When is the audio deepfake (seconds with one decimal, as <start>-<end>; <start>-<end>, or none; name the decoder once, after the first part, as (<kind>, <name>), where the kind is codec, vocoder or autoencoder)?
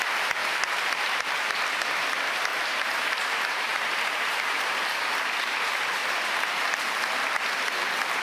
0.4-1.2 (vocoder, BigVGAN v2); 2.5-5.1; 6.0-7.0